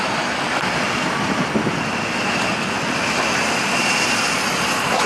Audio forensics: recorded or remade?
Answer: recorded